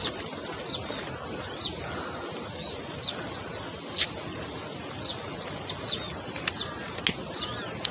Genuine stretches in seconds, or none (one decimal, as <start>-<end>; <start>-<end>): 0.0-7.9